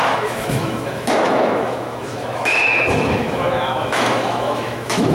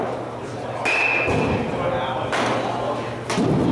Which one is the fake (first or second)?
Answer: first